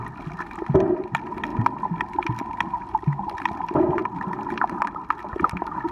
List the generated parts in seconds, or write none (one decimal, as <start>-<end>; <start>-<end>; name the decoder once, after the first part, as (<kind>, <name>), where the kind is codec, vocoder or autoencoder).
none